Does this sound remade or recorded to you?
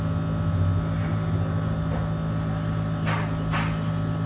recorded